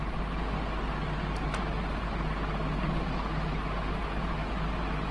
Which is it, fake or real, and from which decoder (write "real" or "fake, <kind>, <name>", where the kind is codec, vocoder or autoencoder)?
real